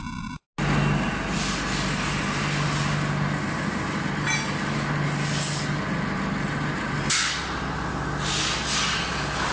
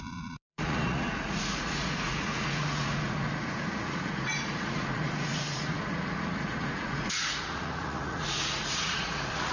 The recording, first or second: first